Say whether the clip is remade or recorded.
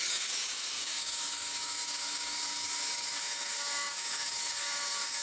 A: remade